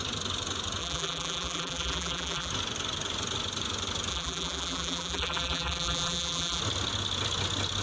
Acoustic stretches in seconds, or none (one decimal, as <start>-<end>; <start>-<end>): 0.0-0.8; 2.5-4.1; 6.6-7.8